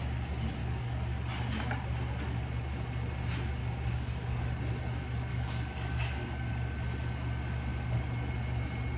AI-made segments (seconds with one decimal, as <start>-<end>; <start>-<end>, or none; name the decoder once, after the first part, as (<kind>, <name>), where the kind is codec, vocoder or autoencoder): 0.6-1.2 (codec, DAC); 3.6-4.4; 5.3-6.5